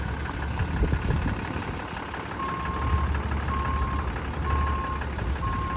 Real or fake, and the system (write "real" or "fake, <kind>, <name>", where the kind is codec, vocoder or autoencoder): real